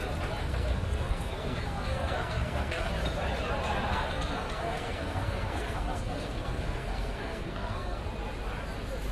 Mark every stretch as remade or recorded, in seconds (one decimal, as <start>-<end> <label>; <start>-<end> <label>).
0.0-0.4 recorded; 0.4-2.9 remade; 2.9-3.9 recorded; 3.9-8.0 remade; 8.0-9.1 recorded